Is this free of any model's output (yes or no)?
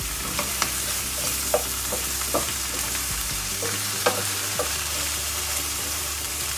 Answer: no